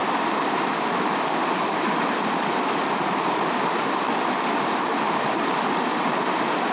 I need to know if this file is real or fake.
real